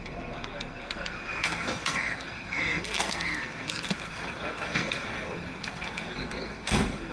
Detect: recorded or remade remade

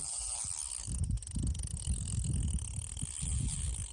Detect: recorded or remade recorded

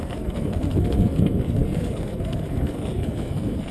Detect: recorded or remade remade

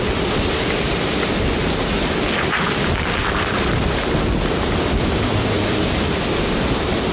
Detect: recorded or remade recorded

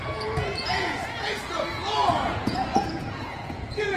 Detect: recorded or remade remade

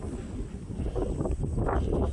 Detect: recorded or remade recorded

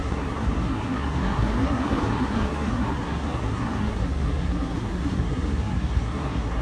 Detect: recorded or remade remade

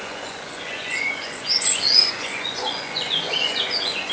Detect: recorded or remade remade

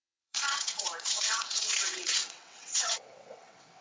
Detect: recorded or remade remade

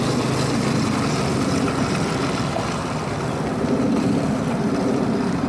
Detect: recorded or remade remade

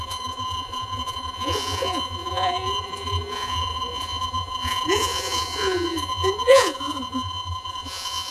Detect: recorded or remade remade